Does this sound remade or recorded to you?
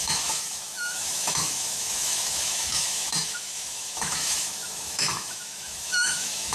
remade